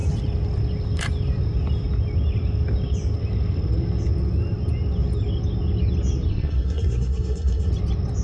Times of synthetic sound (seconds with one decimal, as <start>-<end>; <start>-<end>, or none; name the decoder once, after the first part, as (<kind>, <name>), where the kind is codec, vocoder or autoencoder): 6.3-7.7 (codec, SNAC)